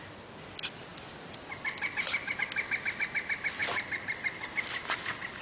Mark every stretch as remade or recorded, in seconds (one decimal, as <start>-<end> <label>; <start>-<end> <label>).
0.0-5.4 recorded

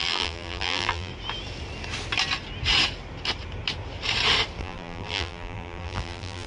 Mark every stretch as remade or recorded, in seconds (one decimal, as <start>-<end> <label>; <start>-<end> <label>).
0.0-1.1 remade; 1.1-4.6 recorded; 4.6-6.5 remade

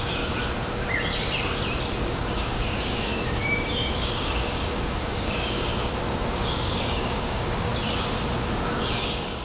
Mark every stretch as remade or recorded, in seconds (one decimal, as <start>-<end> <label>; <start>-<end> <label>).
0.0-0.4 remade; 0.4-2.0 recorded; 2.0-5.7 remade; 5.7-6.3 recorded; 6.3-7.7 remade; 7.7-8.7 recorded; 8.7-9.4 remade